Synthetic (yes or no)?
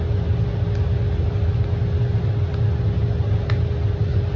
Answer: no